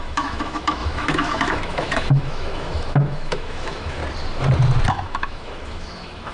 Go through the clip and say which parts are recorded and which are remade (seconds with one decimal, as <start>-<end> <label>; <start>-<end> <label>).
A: 0.0-4.0 remade; 4.0-4.9 recorded; 4.9-6.3 remade